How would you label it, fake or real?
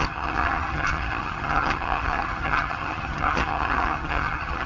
fake